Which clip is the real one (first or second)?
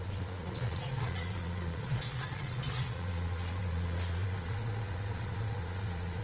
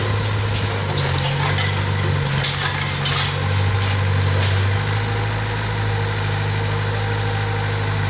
second